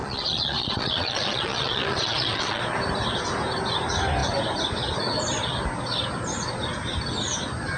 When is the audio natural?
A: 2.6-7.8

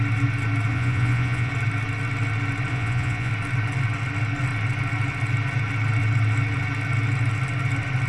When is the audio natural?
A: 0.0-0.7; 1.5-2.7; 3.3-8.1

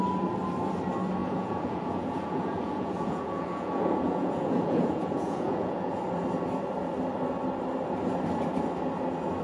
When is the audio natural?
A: 0.0-1.2; 6.0-9.4

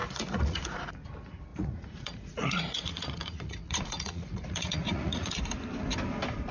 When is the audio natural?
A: 0.9-1.5; 5.4-6.5

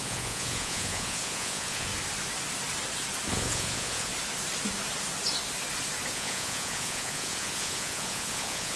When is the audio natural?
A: 1.9-3.3; 4.1-6.1

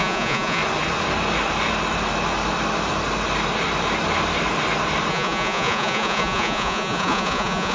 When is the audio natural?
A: 0.6-5.1

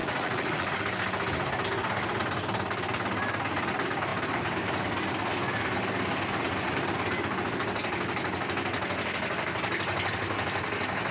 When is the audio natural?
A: 0.7-11.1